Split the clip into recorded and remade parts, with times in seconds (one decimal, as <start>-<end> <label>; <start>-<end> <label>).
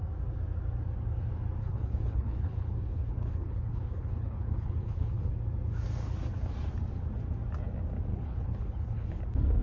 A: 0.0-1.6 recorded; 1.6-5.3 remade; 5.3-8.1 recorded; 8.1-9.2 remade; 9.2-9.6 recorded